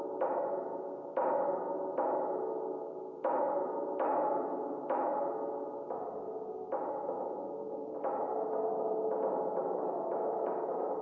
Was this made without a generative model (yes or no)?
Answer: yes